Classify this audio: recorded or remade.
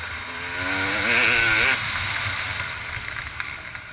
recorded